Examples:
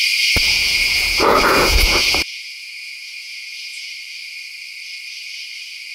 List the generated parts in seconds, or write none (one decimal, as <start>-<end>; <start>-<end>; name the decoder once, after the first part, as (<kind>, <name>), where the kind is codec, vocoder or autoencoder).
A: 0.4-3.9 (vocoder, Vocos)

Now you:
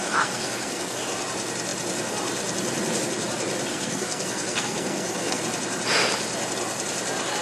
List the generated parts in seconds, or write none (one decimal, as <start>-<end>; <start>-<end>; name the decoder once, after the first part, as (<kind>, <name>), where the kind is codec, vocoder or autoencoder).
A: 0.0-1.0 (codec, SNAC); 3.7-5.4

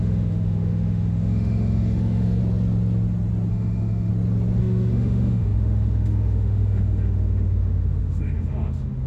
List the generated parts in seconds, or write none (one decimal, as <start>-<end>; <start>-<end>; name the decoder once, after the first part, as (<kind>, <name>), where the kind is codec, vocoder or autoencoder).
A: 0.0-2.4 (autoencoder, DAC-VAE); 3.5-4.1; 4.6-9.1

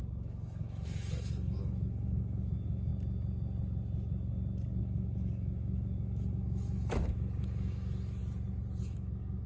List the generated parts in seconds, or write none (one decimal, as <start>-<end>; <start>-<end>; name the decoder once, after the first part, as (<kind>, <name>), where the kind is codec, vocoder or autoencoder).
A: 0.0-2.9 (autoencoder, DAC-VAE); 4.8-8.2; 8.8-9.5

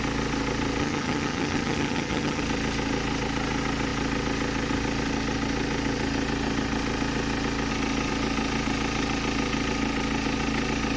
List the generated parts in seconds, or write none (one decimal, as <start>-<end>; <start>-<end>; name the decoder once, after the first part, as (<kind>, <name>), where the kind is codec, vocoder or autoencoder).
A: 0.8-2.4 (vocoder, HiFi-GAN)

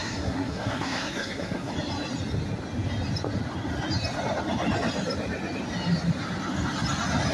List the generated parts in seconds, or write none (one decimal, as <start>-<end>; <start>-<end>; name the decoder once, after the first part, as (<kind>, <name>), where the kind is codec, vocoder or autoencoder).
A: 0.0-1.7 (codec, SNAC)

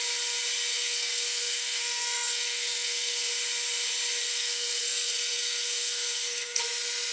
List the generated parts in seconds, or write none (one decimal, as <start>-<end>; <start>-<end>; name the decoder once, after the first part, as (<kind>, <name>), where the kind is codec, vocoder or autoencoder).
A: 0.7-3.3 (codec, SNAC); 4.3-6.6